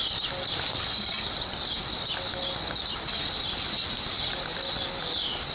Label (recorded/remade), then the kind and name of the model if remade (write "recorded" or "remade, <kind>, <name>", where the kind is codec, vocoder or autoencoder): recorded